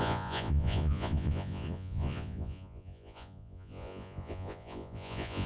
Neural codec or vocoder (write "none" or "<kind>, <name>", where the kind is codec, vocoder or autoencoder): vocoder, Vocos